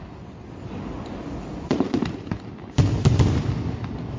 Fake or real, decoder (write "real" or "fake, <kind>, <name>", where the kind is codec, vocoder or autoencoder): real